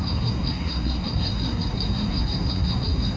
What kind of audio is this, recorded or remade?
remade